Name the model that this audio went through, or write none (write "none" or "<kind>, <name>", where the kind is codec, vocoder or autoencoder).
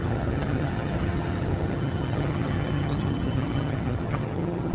vocoder, HiFi-GAN